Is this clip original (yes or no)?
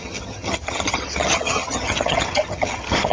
no